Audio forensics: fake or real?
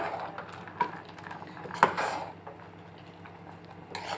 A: real